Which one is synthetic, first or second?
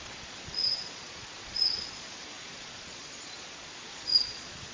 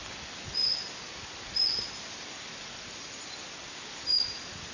first